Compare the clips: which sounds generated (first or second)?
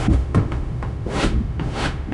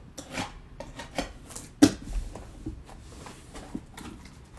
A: first